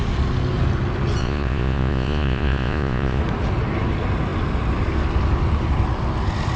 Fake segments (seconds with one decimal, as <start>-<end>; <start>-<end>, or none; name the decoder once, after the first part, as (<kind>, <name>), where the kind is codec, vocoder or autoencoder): 1.2-3.2 (vocoder, Vocos)